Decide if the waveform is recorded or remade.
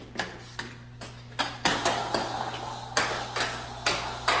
recorded